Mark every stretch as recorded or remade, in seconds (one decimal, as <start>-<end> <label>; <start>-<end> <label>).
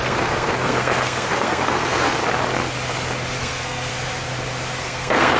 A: 0.0-2.2 remade; 2.2-3.4 recorded; 3.4-3.9 remade; 3.9-4.8 recorded; 4.8-5.4 remade